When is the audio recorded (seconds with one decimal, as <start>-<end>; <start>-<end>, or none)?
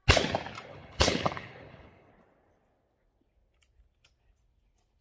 0.0-0.7; 2.1-5.0